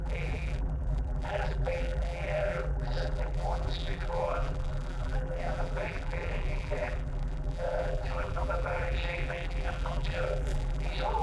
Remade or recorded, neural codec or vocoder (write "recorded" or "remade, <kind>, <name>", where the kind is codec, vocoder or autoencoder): remade, vocoder, BigVGAN v2